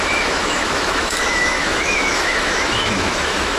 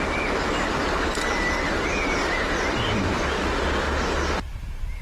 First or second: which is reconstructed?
first